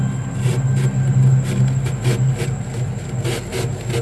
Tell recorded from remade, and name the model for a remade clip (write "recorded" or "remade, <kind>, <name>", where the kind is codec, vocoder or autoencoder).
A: recorded